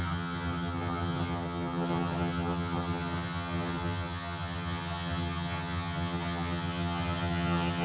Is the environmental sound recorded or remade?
remade